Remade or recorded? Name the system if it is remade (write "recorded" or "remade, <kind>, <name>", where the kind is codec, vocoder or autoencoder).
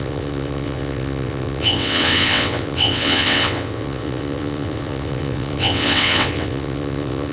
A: remade, vocoder, WaveNeXt